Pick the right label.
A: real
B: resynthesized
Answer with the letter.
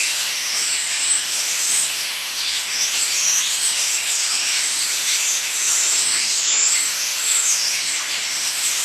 B